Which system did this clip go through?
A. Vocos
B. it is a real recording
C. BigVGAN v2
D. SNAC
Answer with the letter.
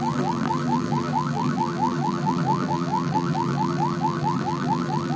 C